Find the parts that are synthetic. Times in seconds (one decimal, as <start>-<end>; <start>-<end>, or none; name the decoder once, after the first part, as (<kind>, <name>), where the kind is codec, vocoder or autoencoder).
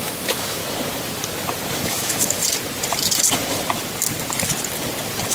0.0-0.6 (autoencoder, DAC-VAE); 1.8-2.4